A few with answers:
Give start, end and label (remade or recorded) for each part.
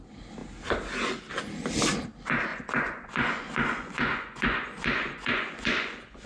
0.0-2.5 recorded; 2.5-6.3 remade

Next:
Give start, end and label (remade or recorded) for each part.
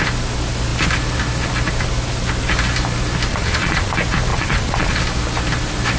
0.0-3.3 recorded; 3.3-3.9 remade; 3.9-4.3 recorded; 4.3-5.0 remade; 5.0-6.0 recorded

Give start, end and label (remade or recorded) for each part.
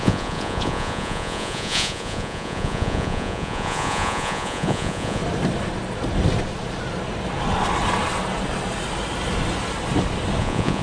0.0-5.2 remade; 5.2-10.4 recorded; 10.4-10.8 remade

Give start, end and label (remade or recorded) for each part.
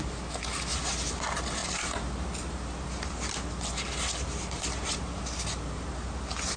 0.0-6.6 recorded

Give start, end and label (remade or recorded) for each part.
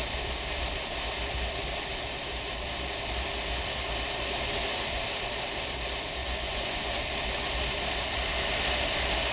0.0-6.2 recorded; 6.2-6.9 remade; 6.9-9.3 recorded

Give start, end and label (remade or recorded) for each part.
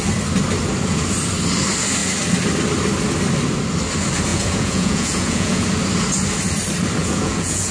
0.0-4.3 recorded; 4.3-5.6 remade; 5.6-7.0 recorded; 7.0-7.7 remade